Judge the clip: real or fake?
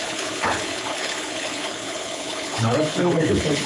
fake